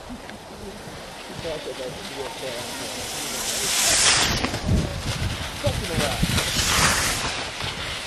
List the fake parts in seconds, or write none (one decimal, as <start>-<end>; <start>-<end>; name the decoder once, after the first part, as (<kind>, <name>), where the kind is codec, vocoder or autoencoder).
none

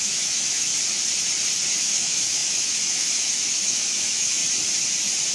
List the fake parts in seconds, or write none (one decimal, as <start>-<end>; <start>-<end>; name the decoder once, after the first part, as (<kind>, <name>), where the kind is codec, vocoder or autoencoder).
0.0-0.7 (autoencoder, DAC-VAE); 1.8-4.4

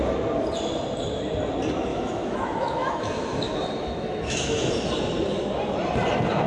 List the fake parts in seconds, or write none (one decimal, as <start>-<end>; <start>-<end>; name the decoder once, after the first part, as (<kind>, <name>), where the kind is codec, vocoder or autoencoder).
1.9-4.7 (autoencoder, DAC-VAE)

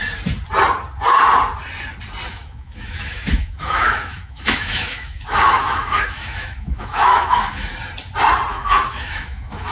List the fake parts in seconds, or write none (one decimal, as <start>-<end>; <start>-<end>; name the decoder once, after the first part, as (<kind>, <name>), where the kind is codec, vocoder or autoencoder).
2.3-7.7 (autoencoder, DAC-VAE); 8.5-9.7

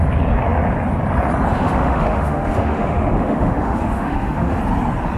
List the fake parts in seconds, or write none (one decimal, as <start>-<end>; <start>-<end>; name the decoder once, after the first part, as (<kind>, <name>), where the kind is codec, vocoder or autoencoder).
1.5-4.6 (autoencoder, DAC-VAE)

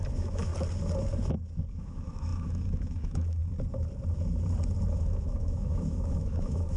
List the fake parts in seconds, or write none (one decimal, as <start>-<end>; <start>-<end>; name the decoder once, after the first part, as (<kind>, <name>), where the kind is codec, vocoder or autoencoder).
0.0-0.5 (autoencoder, DAC-VAE); 1.7-3.4; 4.9-6.8

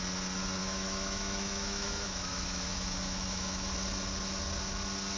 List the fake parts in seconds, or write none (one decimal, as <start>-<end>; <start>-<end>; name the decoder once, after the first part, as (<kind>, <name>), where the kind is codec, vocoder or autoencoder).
0.6-3.7 (autoencoder, DAC-VAE)

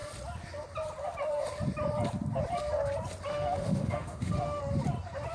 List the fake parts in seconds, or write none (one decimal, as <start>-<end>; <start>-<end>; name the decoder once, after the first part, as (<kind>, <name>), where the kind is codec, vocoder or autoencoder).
3.3-4.6 (autoencoder, DAC-VAE)